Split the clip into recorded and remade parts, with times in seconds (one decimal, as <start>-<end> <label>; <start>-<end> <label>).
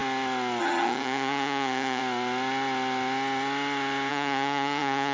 0.0-0.6 recorded; 0.6-2.0 remade; 2.0-4.1 recorded; 4.1-5.1 remade